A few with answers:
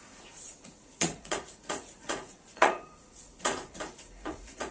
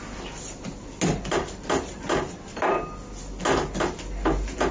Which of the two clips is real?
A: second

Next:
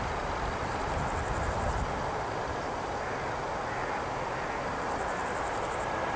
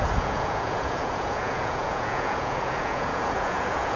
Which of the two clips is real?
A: first